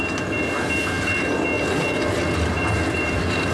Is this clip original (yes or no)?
yes